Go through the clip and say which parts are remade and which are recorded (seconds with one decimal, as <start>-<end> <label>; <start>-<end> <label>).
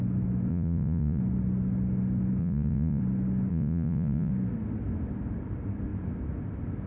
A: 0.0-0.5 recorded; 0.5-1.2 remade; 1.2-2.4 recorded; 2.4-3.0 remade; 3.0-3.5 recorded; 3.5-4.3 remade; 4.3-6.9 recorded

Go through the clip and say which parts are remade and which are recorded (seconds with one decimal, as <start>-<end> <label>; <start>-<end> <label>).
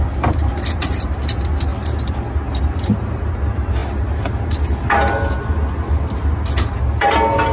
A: 0.0-7.5 recorded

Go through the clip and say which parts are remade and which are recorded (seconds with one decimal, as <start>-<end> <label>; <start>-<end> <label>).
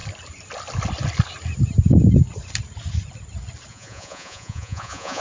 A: 0.0-3.7 recorded; 3.7-5.2 remade